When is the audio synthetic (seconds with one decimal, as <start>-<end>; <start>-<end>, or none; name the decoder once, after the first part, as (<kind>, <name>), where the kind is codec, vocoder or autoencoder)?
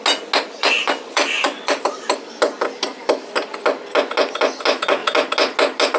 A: 0.6-1.8 (vocoder, Vocos)